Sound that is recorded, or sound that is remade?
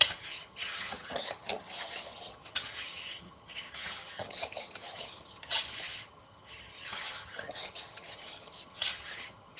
remade